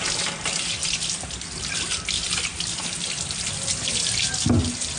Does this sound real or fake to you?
real